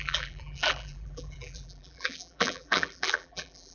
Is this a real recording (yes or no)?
no